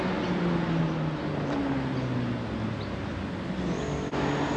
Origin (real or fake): real